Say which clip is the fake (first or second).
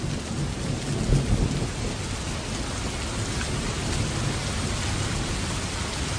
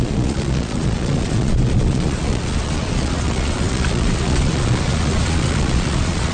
second